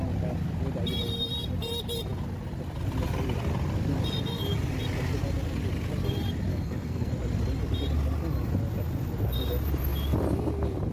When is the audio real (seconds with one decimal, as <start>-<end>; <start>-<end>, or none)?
0.0-6.5; 7.1-10.9